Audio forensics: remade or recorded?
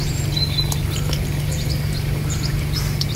remade